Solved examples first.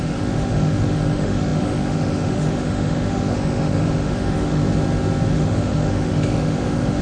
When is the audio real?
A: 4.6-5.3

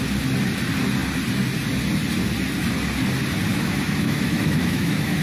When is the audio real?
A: 0.0-3.5

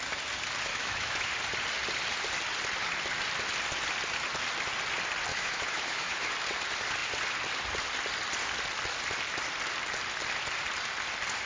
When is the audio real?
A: 0.0-0.7; 1.3-5.3; 6.3-11.5

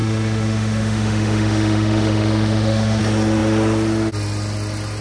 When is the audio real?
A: 3.0-5.0

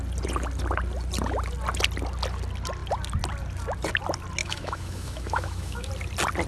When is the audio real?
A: 0.0-4.4; 5.9-6.5

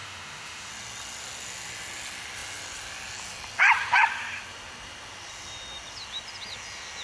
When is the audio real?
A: 0.7-7.0